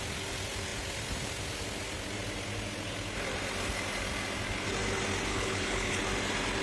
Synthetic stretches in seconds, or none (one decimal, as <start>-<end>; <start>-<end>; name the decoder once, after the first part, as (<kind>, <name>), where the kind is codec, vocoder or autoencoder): 5.3-6.0 (codec, HILCodec)